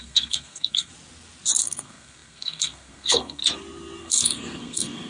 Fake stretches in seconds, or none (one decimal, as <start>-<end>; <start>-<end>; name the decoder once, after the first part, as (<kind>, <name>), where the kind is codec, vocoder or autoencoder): 0.0-0.9 (codec, SNAC); 1.6-3.4; 4.0-5.1